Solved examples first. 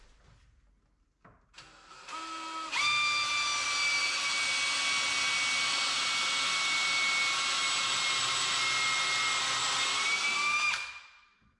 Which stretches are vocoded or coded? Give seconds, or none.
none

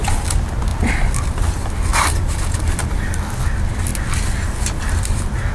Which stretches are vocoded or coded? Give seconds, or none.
0.7-1.4 (vocoder, BigVGAN v2); 1.9-2.8

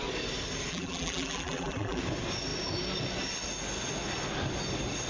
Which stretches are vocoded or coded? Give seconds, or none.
0.7-2.0 (vocoder, BigVGAN v2)

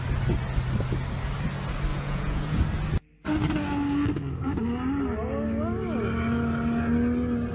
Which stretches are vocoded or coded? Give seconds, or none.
1.9-2.6 (vocoder, Vocos)

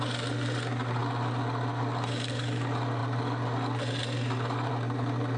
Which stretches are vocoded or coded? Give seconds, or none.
none

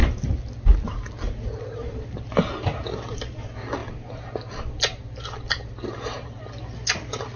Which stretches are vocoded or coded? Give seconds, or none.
none

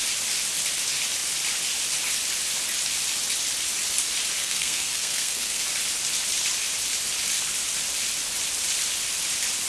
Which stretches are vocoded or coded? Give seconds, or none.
4.4-5.6 (codec, SNAC)